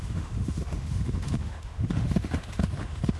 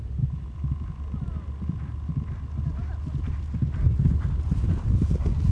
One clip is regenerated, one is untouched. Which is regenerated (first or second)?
first